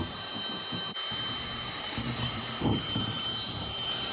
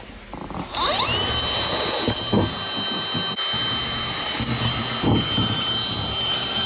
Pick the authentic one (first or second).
second